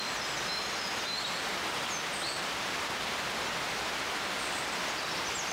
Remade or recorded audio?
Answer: recorded